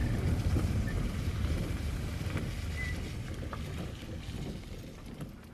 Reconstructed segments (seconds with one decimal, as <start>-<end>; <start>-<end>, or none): 0.0-2.2